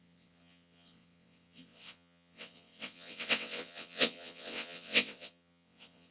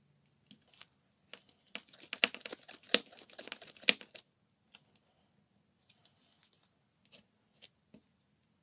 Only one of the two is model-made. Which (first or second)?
first